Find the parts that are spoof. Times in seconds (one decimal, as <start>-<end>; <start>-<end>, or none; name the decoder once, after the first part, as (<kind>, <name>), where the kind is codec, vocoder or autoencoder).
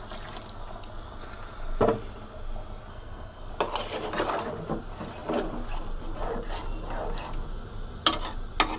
2.9-3.5 (codec, SNAC)